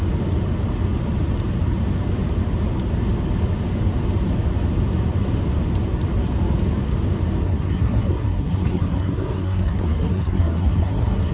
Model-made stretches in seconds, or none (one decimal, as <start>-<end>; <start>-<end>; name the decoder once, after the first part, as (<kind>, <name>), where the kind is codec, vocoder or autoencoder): 7.4-11.3 (codec, SNAC)